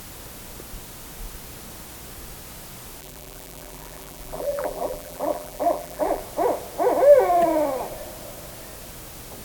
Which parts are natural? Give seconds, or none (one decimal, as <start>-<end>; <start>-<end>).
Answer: 0.0-3.0; 6.2-9.4

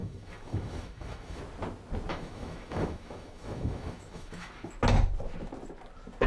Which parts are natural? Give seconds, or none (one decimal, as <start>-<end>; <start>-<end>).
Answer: 1.4-2.1; 4.7-6.3

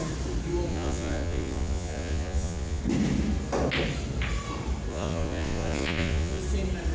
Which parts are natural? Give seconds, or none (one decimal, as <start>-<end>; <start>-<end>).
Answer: 0.0-0.7; 2.8-4.9; 6.4-6.9

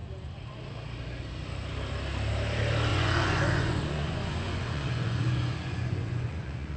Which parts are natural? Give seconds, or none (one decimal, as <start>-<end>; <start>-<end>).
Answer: 0.0-2.9

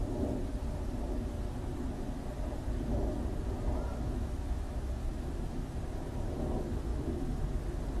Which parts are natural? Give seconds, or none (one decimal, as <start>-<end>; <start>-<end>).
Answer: 0.0-3.9; 5.8-6.9; 7.6-8.0

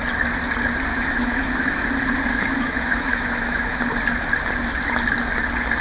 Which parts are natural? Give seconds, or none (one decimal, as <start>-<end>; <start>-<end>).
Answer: 0.0-0.9; 1.9-2.3; 3.8-5.8